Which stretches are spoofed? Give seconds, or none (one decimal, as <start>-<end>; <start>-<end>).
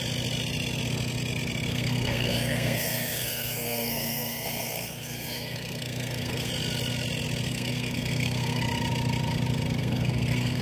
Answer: 1.7-6.5; 7.5-8.6; 9.8-10.6